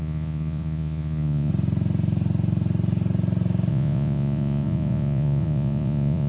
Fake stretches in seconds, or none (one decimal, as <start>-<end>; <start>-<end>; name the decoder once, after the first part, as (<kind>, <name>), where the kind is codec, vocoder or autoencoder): 0.0-1.5 (vocoder, Vocos); 3.7-6.3